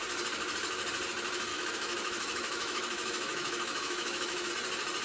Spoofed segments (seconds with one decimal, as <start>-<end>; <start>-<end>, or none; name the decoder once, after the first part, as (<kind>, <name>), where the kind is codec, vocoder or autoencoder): 1.5-4.5 (autoencoder, DAC-VAE)